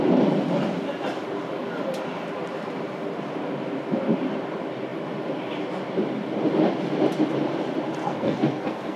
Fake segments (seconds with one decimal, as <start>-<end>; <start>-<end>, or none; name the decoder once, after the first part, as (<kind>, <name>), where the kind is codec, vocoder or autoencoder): 8.0-9.0 (codec, SNAC)